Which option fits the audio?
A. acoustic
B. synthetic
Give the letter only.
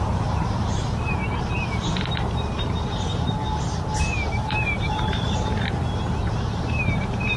B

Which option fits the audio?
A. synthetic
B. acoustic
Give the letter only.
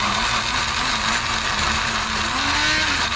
B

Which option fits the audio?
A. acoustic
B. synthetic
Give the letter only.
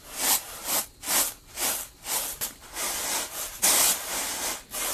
A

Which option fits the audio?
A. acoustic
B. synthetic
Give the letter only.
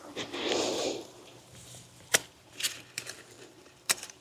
B